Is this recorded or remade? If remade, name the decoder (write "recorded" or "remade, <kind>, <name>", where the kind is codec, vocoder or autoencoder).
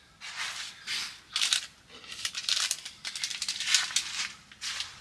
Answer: recorded